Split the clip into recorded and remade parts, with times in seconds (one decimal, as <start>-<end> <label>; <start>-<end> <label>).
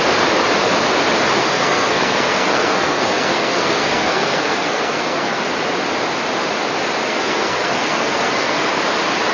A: 0.0-1.4 recorded; 1.4-5.5 remade; 5.5-7.0 recorded; 7.0-8.8 remade; 8.8-9.3 recorded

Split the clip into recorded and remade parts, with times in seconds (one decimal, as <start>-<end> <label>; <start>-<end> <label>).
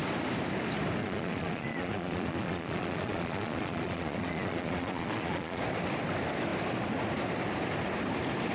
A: 0.0-1.0 recorded; 1.0-5.6 remade; 5.6-8.5 recorded